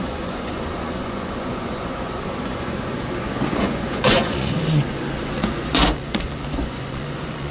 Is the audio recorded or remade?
remade